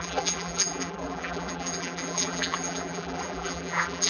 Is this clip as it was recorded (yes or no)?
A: no